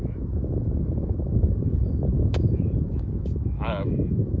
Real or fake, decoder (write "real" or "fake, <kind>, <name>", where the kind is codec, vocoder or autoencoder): fake, autoencoder, DAC-VAE